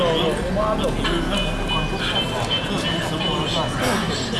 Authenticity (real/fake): real